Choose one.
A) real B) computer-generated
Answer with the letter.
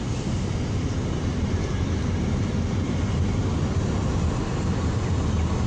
A